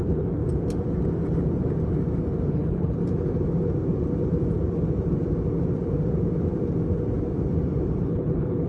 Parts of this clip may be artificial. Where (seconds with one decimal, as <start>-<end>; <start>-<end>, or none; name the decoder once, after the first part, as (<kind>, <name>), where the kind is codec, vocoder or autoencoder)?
0.0-0.4 (codec, HILCodec); 2.5-3.0; 8.0-8.7